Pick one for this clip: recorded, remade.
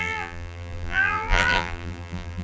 remade